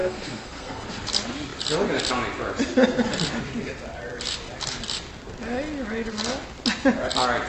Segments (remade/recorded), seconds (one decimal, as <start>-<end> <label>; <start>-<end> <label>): 0.0-0.8 remade; 0.8-7.5 recorded